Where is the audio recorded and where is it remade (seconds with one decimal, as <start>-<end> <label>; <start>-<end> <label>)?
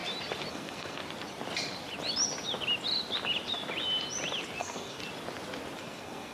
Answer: 0.0-0.5 recorded; 0.5-1.0 remade; 1.0-4.6 recorded; 4.6-5.0 remade; 5.0-5.8 recorded; 5.8-6.3 remade